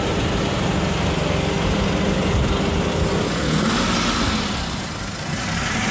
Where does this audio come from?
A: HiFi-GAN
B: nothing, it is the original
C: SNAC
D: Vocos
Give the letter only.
B